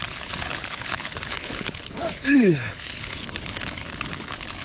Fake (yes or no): yes